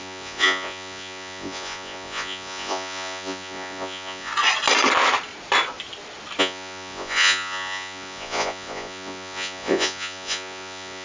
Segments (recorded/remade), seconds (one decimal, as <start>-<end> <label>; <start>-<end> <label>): 0.0-4.3 remade; 4.3-6.4 recorded; 6.4-11.0 remade